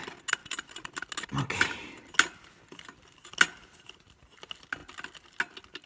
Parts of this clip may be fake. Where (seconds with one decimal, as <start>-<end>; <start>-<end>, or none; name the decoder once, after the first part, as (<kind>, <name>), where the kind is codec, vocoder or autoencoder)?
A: none